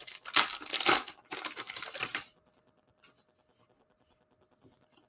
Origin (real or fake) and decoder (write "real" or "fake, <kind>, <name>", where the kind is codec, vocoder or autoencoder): real